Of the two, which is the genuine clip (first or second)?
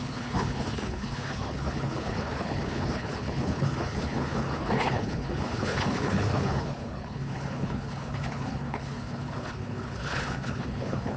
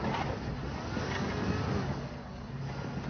second